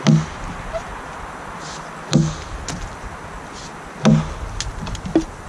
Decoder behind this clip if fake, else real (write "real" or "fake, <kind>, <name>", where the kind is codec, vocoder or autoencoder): real